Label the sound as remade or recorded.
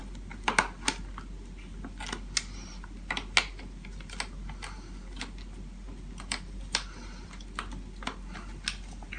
recorded